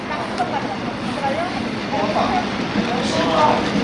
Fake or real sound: real